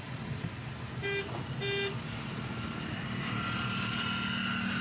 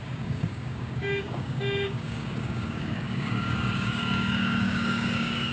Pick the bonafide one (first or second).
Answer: first